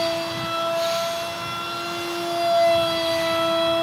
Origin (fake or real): real